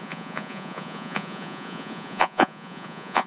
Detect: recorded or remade remade